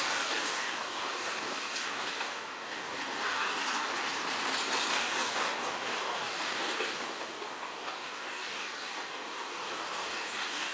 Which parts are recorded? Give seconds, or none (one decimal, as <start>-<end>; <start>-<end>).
3.9-4.9